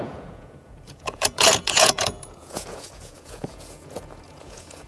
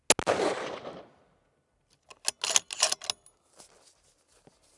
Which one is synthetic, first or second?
first